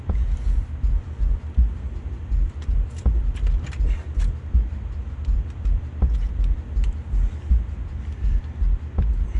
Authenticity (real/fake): fake